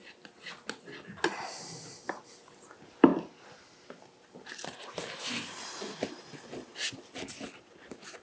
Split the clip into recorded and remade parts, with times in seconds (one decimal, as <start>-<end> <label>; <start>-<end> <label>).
0.0-8.2 recorded